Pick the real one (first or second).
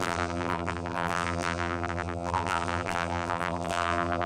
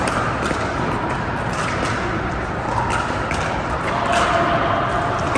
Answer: second